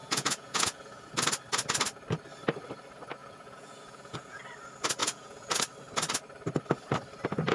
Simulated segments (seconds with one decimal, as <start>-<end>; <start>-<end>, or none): 0.0-1.1; 3.2-4.4; 5.0-5.6

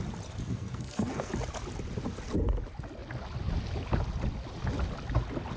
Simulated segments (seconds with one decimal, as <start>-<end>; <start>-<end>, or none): 0.4-1.3

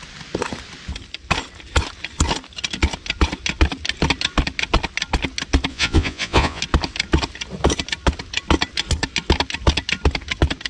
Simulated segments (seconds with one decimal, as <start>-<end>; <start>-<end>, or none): 5.7-6.6

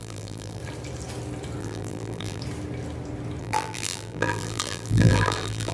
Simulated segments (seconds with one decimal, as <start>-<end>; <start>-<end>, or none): 0.0-0.6; 1.6-2.4; 3.4-5.7

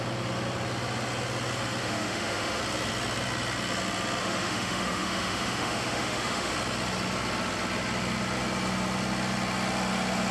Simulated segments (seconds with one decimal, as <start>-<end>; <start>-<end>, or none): 1.8-2.6; 4.2-6.5